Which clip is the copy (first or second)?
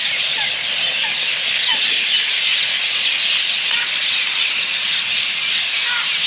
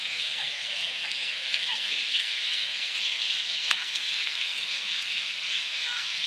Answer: second